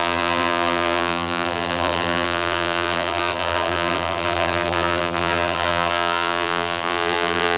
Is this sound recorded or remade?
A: remade